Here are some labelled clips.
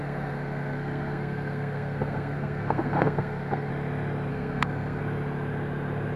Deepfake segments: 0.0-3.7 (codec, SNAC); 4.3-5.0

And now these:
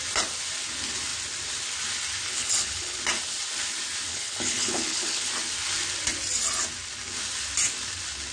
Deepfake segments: 2.3-3.0 (codec, HILCodec); 4.1-5.3

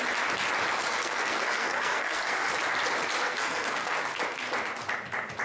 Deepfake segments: 0.8-2.5 (codec, SNAC); 3.2-4.0

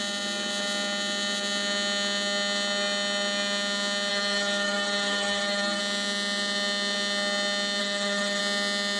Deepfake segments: 4.1-5.8 (codec, SNAC); 7.8-8.4

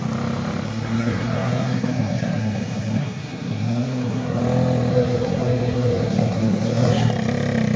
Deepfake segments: 0.6-4.4 (codec, SNAC); 4.9-7.1